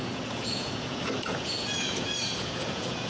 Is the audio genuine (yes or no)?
no